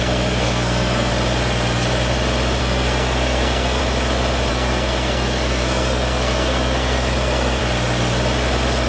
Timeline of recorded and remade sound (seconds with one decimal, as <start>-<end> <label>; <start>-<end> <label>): 0.0-1.1 remade; 1.1-2.6 recorded; 2.6-3.8 remade; 3.8-4.5 recorded; 4.5-7.6 remade; 7.6-8.9 recorded